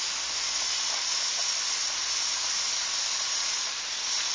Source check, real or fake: real